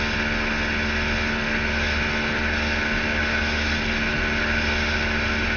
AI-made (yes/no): no